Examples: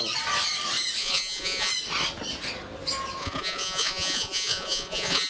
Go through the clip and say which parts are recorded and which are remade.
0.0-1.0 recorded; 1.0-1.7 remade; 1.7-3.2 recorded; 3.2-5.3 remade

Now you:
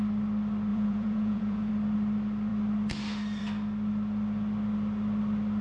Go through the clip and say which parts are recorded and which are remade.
0.0-0.7 recorded; 0.7-1.7 remade; 1.7-5.6 recorded

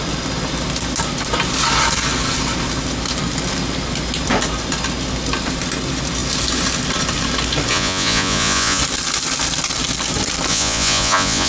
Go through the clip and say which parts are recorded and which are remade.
0.0-7.7 recorded; 7.7-8.8 remade; 8.8-10.5 recorded; 10.5-11.5 remade

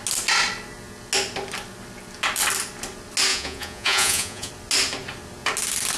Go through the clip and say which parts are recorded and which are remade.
0.0-3.3 recorded; 3.3-4.5 remade; 4.5-6.0 recorded

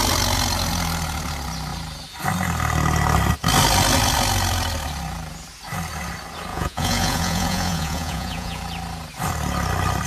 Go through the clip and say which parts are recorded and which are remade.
0.0-6.5 recorded; 6.5-8.6 remade; 8.6-10.1 recorded